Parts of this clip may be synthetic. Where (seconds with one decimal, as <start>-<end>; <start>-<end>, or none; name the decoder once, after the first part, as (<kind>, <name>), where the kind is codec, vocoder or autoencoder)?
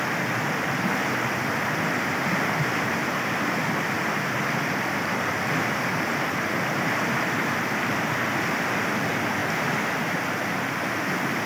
none